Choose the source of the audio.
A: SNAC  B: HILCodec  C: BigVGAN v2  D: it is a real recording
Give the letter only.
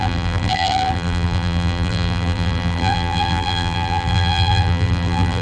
C